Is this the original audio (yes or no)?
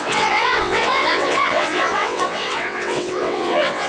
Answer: no